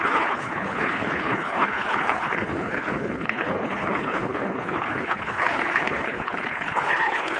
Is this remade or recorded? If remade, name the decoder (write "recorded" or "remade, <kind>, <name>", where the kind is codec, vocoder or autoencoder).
remade, codec, HILCodec